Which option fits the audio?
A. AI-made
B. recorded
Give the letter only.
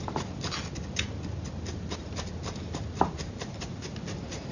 B